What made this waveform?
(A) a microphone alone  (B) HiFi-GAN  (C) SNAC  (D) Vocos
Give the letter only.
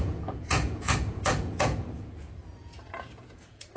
D